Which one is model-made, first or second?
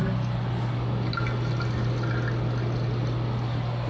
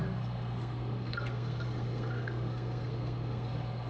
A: second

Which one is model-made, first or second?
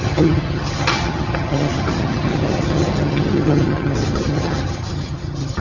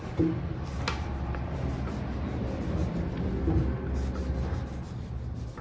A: first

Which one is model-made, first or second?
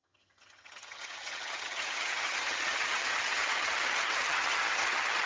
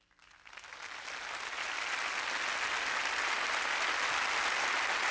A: first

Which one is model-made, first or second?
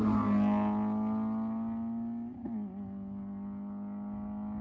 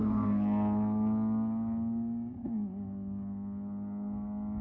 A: second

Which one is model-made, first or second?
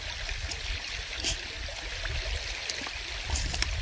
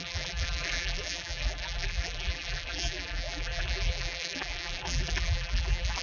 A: second